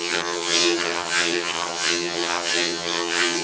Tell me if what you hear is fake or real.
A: fake